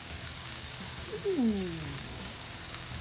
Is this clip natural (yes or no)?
no